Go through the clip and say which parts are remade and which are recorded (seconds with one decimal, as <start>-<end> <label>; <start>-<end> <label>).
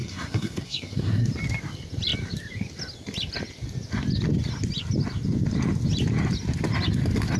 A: 0.0-1.3 remade; 1.3-7.4 recorded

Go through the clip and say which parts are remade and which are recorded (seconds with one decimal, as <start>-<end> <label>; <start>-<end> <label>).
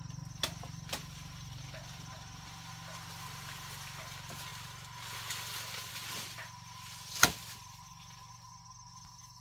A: 0.0-9.4 recorded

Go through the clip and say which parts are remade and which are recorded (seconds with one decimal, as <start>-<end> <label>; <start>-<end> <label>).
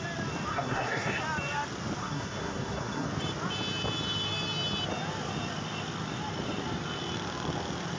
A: 0.0-0.5 recorded; 0.5-1.2 remade; 1.2-2.0 recorded; 2.0-3.1 remade; 3.1-8.0 recorded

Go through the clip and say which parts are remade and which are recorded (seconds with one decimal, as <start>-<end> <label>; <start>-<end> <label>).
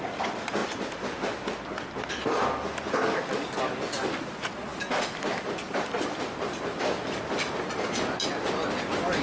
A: 0.0-9.2 recorded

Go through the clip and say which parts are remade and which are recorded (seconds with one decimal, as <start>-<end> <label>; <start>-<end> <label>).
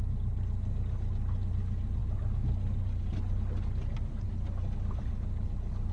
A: 0.0-5.9 recorded